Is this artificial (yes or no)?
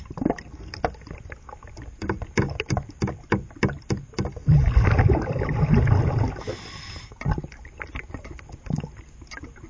no